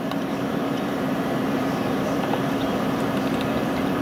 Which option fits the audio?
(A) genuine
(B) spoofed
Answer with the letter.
B